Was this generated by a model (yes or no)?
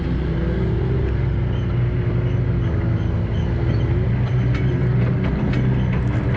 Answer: no